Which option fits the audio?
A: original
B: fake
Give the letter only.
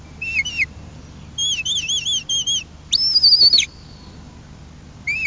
A